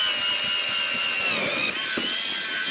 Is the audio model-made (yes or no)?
no